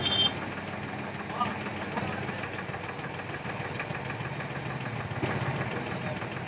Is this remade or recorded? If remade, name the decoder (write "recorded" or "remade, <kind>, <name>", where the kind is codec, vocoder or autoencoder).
recorded